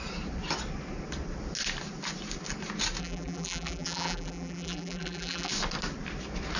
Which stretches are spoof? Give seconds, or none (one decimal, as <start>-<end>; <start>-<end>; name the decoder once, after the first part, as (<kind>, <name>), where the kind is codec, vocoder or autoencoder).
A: 3.0-5.5 (vocoder, BigVGAN v2)

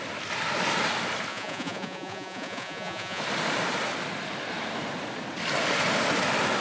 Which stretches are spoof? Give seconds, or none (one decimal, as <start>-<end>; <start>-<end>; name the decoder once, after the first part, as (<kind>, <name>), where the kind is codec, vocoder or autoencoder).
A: 1.3-3.2 (vocoder, Vocos)